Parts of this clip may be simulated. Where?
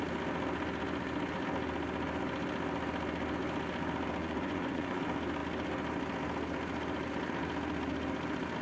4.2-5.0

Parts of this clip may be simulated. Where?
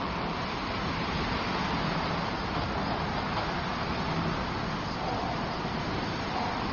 none